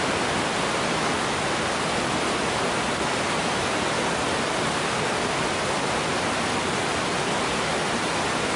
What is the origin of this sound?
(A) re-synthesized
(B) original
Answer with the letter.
B